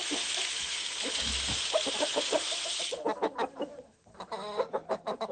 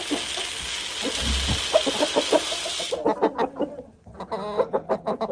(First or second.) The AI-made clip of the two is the first